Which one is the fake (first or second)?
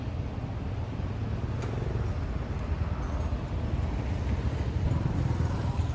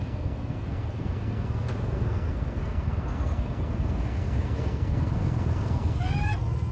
second